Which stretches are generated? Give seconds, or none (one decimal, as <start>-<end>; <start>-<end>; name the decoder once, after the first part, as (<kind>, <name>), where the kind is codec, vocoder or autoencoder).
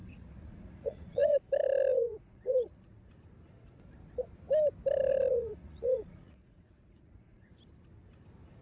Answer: 0.0-1.4 (vocoder, Vocos); 1.9-3.1; 5.3-7.5